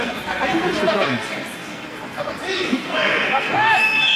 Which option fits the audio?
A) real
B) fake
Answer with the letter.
B